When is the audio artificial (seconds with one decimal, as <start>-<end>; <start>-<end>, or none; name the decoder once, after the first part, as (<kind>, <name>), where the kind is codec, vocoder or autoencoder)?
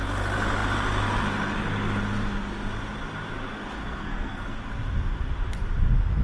3.8-4.6 (codec, SNAC)